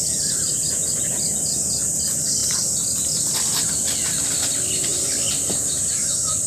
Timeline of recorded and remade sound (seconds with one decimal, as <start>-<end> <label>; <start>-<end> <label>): 0.0-6.5 recorded